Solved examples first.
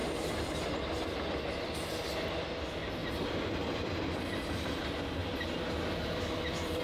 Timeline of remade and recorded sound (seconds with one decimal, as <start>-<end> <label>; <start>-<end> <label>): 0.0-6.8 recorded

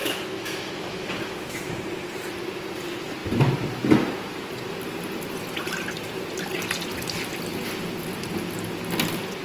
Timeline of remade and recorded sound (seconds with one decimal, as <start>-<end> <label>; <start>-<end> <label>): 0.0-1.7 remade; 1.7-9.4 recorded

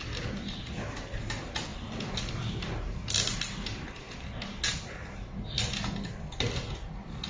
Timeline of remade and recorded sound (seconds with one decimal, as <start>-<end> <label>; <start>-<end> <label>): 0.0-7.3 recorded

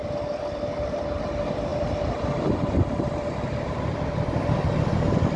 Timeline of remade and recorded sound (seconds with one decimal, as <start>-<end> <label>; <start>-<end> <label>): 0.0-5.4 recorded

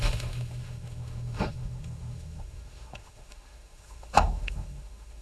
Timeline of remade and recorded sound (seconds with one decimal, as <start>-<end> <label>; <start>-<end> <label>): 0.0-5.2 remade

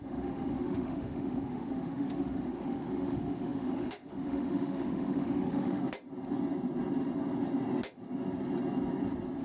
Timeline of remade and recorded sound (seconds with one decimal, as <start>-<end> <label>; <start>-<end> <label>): 0.0-5.8 remade; 5.8-9.4 recorded